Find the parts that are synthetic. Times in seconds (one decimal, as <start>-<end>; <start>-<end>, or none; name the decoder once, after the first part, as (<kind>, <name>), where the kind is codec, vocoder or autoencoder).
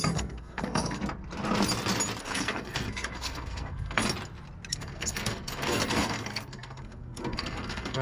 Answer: 0.0-1.0 (codec, SNAC); 2.2-4.0; 4.7-8.0